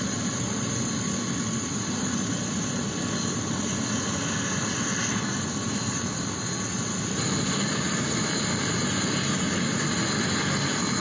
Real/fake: real